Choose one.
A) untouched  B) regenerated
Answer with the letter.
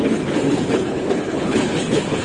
B